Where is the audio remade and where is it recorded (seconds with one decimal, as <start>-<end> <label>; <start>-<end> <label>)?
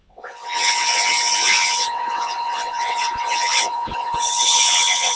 0.0-5.2 remade